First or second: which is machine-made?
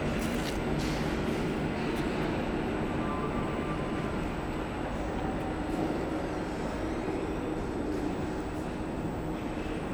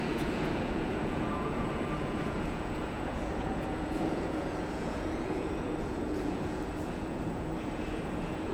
second